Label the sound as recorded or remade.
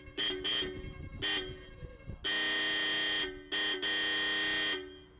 recorded